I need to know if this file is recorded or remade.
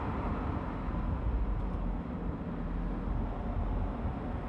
recorded